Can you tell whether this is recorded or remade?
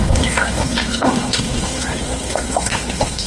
remade